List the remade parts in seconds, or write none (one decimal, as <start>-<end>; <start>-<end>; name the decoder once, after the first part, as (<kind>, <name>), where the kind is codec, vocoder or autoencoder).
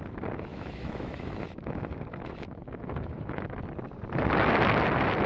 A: 0.5-3.7 (autoencoder, DAC-VAE)